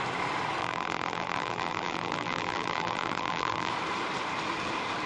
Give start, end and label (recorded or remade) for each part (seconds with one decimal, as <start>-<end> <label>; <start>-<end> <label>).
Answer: 0.0-0.6 recorded; 0.6-3.7 remade; 3.7-5.1 recorded